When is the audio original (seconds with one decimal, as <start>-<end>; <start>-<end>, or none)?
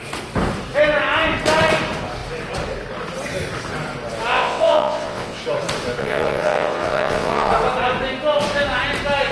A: 0.0-4.3; 5.4-6.0; 7.5-9.3